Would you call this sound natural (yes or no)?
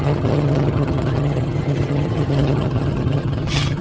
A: no